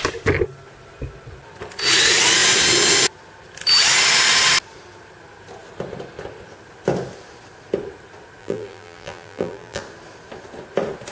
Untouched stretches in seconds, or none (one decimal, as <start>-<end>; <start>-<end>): 0.0-8.4; 9.8-11.1